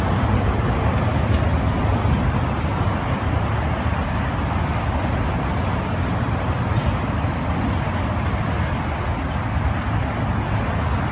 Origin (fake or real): real